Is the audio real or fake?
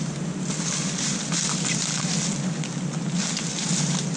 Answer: real